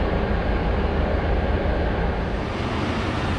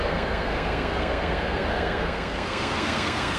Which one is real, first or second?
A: first